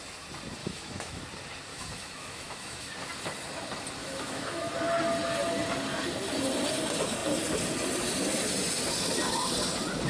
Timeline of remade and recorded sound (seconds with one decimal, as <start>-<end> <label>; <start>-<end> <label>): 0.0-0.6 recorded; 0.6-1.2 remade; 1.2-1.7 recorded; 1.7-2.9 remade; 2.9-4.0 recorded; 4.0-4.7 remade; 4.7-10.1 recorded